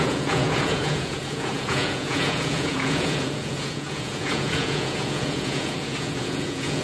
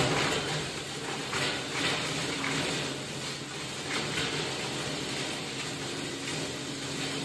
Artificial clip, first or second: first